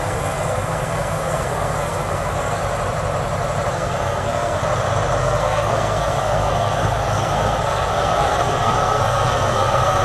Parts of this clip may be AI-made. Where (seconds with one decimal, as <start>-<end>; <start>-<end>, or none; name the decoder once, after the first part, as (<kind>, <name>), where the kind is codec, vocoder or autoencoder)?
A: 0.0-2.6 (codec, SNAC); 3.7-4.6; 5.2-10.0